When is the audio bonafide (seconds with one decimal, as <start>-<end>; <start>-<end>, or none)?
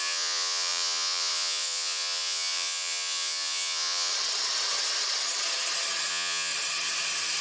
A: 4.1-6.1; 6.5-7.4